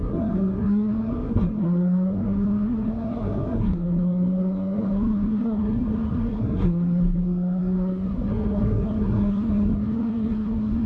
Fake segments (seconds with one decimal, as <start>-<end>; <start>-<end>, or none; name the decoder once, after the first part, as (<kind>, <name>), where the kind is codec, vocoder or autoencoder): 0.0-10.9 (codec, SNAC)